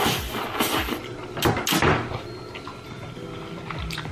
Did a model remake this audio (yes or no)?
no